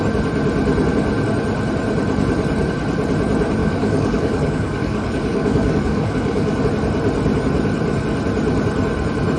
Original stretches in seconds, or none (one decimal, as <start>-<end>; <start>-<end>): 0.0-3.6; 6.6-9.4